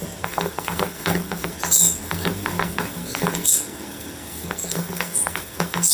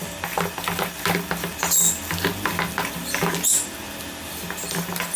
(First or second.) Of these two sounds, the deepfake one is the first